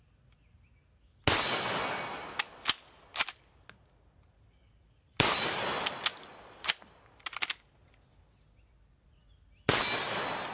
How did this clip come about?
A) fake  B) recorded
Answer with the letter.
B